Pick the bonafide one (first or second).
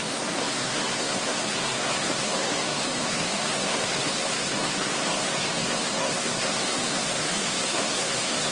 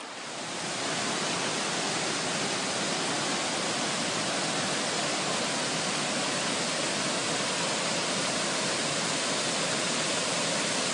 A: second